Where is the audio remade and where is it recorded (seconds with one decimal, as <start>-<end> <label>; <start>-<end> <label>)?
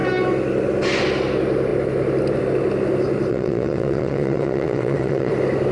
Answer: 0.0-3.3 recorded; 3.3-5.3 remade; 5.3-5.7 recorded